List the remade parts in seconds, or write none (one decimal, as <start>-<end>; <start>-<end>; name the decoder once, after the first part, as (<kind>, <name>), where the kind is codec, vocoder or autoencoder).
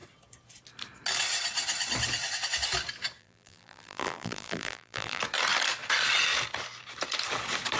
3.2-5.2 (vocoder, BigVGAN v2)